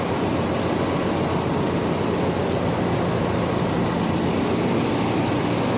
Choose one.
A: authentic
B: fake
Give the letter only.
A